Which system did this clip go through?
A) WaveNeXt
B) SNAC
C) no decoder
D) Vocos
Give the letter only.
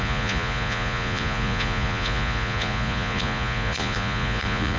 D